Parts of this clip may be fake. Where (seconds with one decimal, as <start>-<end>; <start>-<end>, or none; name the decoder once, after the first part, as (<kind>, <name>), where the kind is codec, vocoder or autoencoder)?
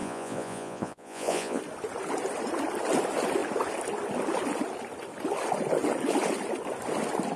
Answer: 0.0-1.6 (vocoder, Vocos)